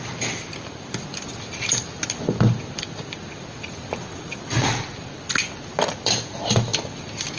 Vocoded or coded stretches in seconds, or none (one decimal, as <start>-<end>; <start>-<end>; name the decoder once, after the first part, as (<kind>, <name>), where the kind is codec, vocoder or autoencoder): none